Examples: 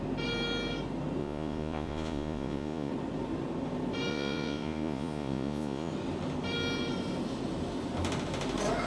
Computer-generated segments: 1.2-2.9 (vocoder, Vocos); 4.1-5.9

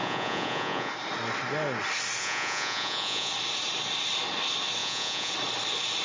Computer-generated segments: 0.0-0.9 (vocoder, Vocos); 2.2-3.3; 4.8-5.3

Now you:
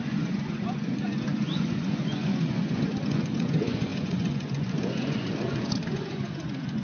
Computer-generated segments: 0.0-6.8 (vocoder, Vocos)